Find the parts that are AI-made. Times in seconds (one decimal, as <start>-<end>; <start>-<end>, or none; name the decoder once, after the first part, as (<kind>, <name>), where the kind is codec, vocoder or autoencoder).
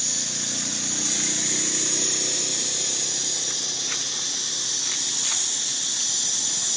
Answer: none